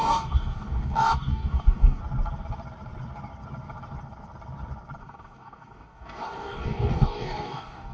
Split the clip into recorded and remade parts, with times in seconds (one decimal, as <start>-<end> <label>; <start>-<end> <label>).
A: 0.0-2.0 remade; 2.0-5.0 recorded; 5.0-7.9 remade